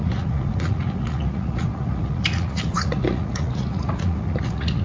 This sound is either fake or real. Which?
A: fake